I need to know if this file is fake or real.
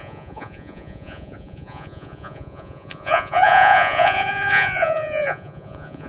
fake